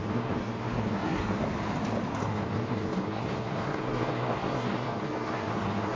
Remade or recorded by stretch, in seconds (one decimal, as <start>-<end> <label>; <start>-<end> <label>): 0.0-1.4 remade; 1.4-2.2 recorded; 2.2-6.0 remade